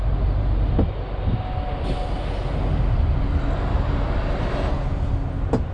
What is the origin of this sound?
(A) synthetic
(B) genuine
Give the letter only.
B